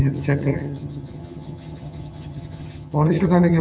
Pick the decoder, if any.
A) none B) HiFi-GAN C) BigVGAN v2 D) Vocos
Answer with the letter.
B